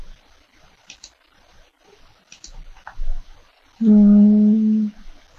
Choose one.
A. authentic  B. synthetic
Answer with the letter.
A